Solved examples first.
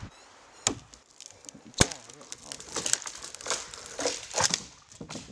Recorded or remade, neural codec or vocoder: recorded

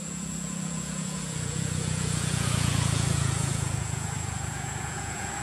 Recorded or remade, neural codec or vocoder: remade, vocoder, Vocos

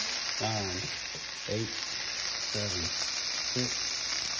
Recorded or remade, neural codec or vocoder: recorded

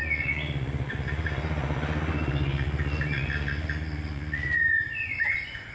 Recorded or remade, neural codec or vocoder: remade, vocoder, Vocos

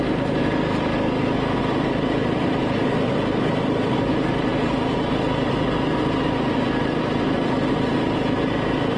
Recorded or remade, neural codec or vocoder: recorded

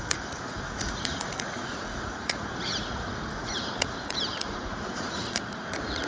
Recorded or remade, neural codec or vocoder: remade, vocoder, Vocos